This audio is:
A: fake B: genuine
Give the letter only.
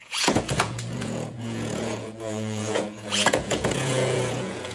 A